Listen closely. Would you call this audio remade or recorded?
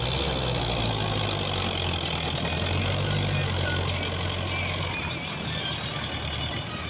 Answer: recorded